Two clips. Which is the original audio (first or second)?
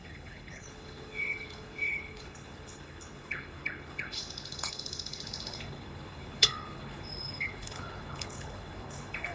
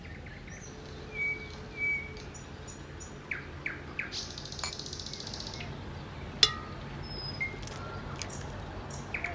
second